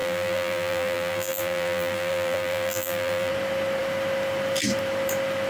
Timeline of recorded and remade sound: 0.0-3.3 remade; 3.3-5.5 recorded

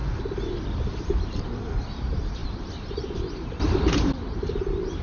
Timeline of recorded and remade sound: 0.0-1.0 recorded; 1.0-5.0 remade

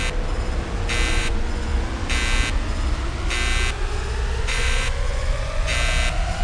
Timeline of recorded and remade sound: 0.0-1.1 recorded; 1.1-1.7 remade; 1.7-4.4 recorded; 4.4-5.7 remade; 5.7-6.4 recorded

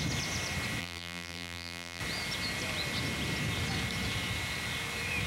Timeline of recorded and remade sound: 0.0-0.8 recorded; 0.8-2.0 remade; 2.0-5.3 recorded

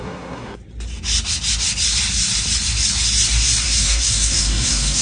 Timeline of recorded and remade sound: 0.0-0.6 remade; 0.6-3.6 recorded; 3.6-5.0 remade

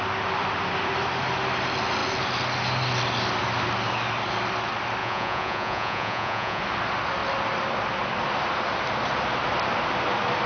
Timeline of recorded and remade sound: 0.0-5.0 recorded; 5.0-6.6 remade; 6.6-10.5 recorded